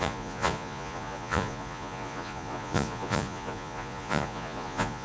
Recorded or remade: remade